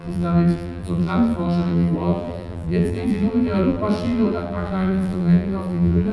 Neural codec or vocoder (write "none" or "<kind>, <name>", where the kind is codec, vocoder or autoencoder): vocoder, BigVGAN v2